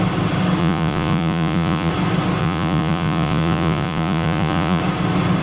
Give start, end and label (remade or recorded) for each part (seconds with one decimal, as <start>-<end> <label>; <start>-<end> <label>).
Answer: 0.0-0.6 recorded; 0.6-1.9 remade; 1.9-2.4 recorded; 2.4-4.8 remade; 4.8-5.4 recorded